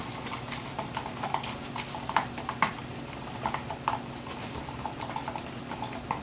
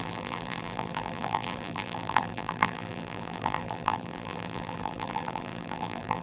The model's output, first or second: second